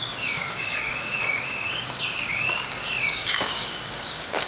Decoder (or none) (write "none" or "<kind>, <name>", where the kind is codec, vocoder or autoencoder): codec, DAC